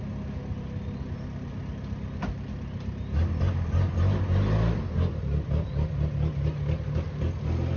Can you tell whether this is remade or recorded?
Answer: recorded